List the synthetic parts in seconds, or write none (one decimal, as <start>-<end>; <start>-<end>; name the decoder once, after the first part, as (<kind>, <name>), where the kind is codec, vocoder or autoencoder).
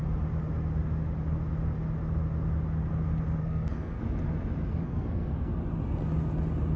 3.4-4.0 (codec, SNAC); 4.7-5.5